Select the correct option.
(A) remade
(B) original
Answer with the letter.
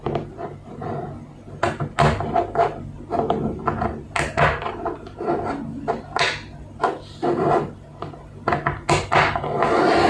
B